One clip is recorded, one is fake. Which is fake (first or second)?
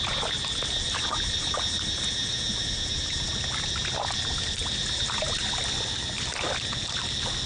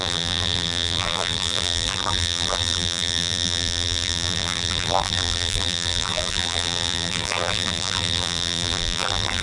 second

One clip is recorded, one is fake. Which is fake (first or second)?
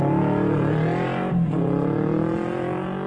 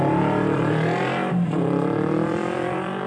second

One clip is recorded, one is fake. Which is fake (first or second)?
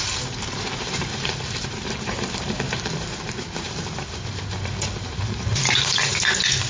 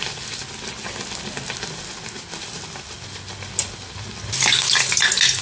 first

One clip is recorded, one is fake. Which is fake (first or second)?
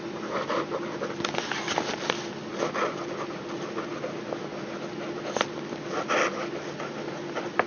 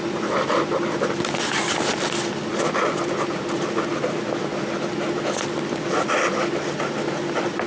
second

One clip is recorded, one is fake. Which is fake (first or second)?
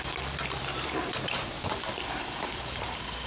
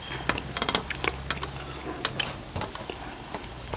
first